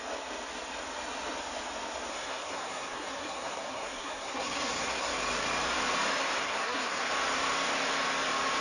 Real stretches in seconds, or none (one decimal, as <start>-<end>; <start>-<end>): 0.0-2.1; 5.1-6.4; 7.1-8.6